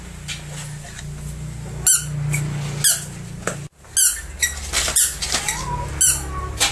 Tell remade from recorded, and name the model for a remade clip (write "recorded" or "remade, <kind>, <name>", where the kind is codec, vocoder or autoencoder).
recorded